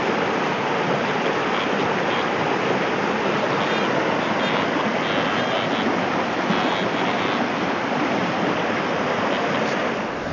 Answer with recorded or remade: recorded